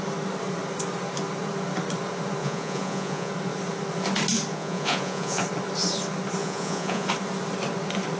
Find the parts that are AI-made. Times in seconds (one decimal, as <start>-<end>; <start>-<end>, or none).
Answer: 2.4-3.3; 4.5-5.4; 6.4-7.1